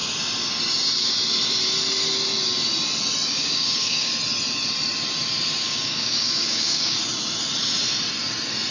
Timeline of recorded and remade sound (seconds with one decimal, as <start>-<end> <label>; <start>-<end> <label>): 0.0-3.3 recorded; 3.3-4.1 remade; 4.1-5.6 recorded; 5.6-7.0 remade; 7.0-8.7 recorded